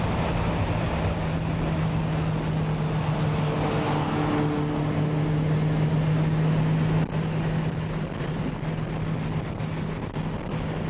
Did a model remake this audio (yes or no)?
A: no